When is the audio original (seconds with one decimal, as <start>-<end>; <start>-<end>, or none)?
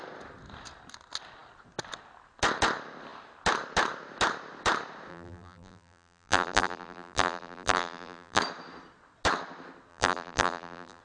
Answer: 0.0-5.1; 8.4-9.9